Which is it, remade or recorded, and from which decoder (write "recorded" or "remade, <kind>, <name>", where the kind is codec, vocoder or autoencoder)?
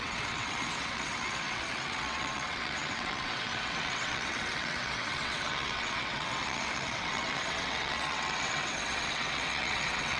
remade, vocoder, WaveNeXt